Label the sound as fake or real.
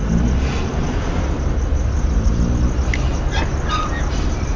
real